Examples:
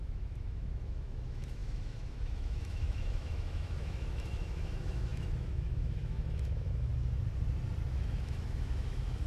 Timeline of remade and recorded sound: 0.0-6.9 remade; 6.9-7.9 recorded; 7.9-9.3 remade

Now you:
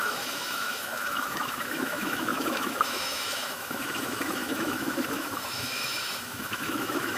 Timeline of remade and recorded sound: 0.0-7.2 remade